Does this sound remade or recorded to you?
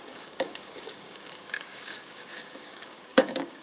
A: remade